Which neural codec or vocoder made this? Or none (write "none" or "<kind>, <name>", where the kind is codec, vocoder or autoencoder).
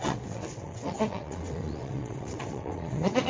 vocoder, WaveNeXt